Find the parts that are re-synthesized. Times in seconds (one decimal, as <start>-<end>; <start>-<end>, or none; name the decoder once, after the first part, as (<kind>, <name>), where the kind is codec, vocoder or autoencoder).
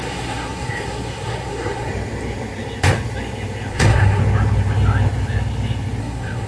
0.0-1.9 (codec, SNAC); 3.7-4.2; 6.0-6.5